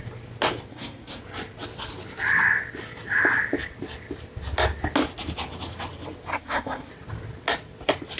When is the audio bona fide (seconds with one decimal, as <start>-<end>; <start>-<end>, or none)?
0.0-0.7; 1.2-6.3; 6.9-8.2